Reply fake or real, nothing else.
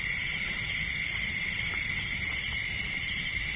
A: fake